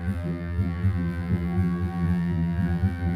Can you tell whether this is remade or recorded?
remade